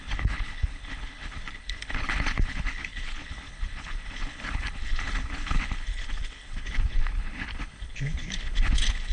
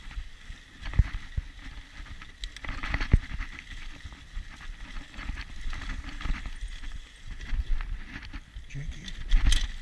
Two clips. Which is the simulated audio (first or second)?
first